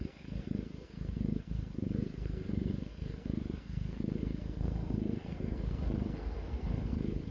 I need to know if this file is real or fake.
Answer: fake